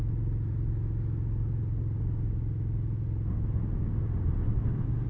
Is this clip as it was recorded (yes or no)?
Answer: yes